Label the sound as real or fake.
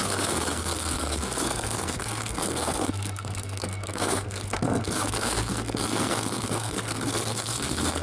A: fake